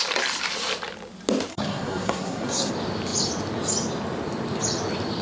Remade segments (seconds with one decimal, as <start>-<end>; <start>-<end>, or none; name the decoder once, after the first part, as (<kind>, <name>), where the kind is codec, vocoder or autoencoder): 1.5-2.7 (codec, SNAC)